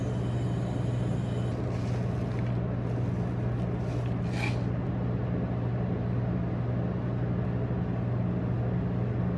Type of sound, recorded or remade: recorded